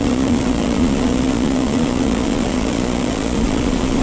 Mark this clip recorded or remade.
remade